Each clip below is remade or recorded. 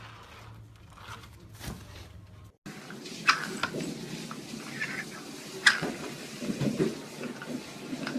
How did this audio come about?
recorded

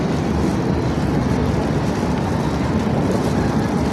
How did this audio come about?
recorded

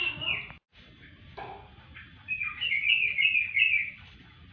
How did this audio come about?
recorded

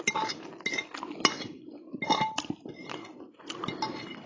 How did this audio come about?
recorded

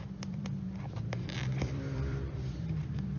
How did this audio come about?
remade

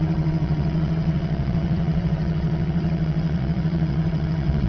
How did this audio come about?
remade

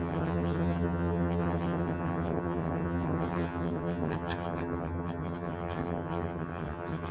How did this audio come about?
remade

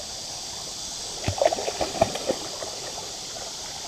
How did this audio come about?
recorded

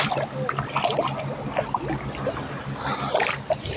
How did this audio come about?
recorded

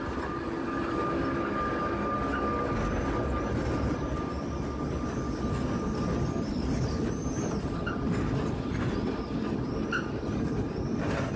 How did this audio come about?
recorded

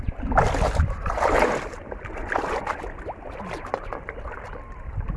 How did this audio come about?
recorded